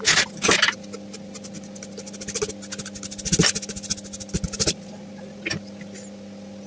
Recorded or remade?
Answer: recorded